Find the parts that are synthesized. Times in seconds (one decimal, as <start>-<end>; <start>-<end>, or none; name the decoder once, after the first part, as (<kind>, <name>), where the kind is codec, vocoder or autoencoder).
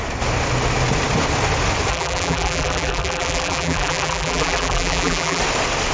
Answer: 1.9-5.4 (vocoder, BigVGAN v2)